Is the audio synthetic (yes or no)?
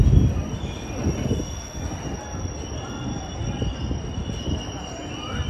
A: no